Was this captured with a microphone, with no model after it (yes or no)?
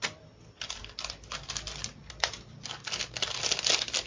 yes